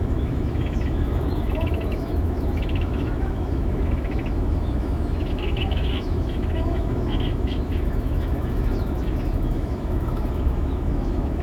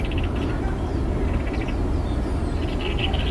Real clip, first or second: second